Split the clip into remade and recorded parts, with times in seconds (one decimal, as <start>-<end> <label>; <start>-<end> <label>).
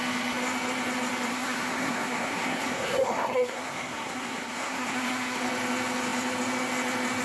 0.0-1.3 recorded; 1.3-5.4 remade; 5.4-7.2 recorded